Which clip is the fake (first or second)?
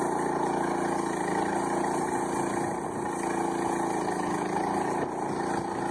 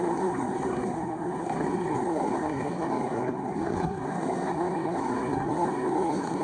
second